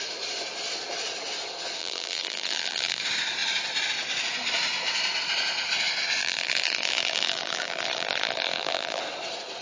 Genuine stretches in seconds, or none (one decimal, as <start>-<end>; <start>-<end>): 0.0-1.8; 3.0-6.2; 9.0-9.6